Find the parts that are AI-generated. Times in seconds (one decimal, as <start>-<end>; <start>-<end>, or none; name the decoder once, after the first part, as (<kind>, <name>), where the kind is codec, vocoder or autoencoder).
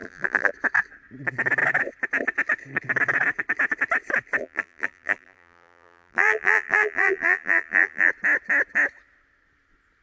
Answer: 0.0-0.5 (vocoder, BigVGAN v2); 4.4-8.1